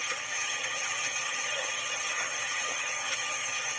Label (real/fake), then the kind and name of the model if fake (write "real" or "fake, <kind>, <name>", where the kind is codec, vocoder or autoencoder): fake, vocoder, HiFi-GAN